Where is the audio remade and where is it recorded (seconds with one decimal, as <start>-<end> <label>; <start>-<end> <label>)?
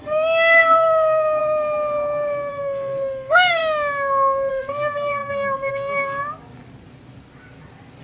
0.0-1.4 remade; 1.4-2.5 recorded; 2.5-3.6 remade; 3.6-4.5 recorded; 4.5-6.2 remade; 6.2-8.0 recorded